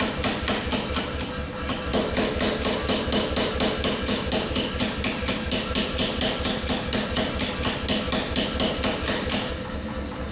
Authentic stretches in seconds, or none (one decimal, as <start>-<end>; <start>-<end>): 0.0-10.3